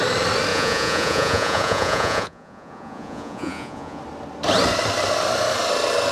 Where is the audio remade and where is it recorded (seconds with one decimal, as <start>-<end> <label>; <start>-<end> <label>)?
0.0-0.5 recorded; 0.5-4.0 remade; 4.0-6.1 recorded